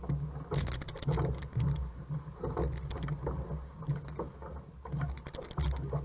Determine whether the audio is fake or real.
real